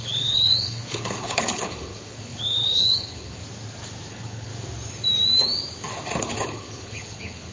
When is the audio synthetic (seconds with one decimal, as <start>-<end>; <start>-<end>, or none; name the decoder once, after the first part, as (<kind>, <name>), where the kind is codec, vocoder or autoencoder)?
0.0-3.4 (codec, HILCodec); 4.1-4.5; 6.2-7.5